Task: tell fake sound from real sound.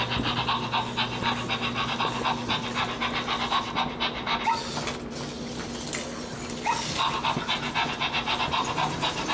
real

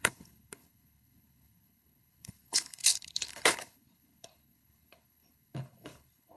fake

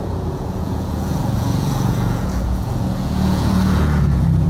fake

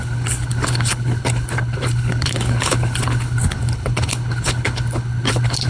fake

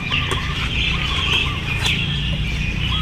real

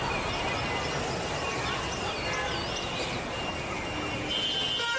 real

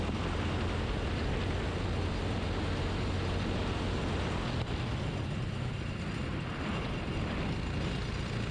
real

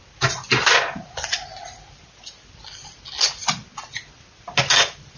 real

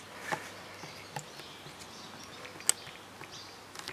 real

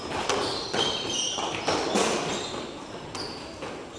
real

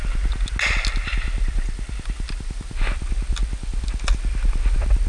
real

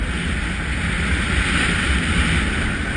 real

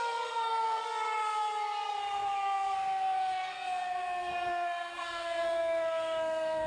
fake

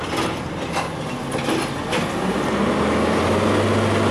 real